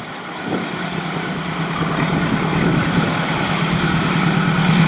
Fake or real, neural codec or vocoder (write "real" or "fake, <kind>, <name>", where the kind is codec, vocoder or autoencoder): real